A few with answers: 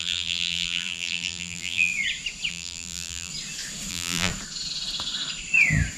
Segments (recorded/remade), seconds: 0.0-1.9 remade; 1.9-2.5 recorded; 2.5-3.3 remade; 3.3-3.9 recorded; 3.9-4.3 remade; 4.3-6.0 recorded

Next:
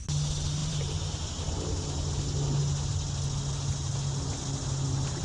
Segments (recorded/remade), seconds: 0.0-0.6 recorded; 0.6-1.8 remade; 1.8-5.2 recorded